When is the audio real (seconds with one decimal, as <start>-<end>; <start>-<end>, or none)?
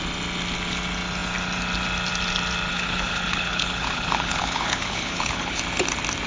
0.0-2.7; 5.6-6.3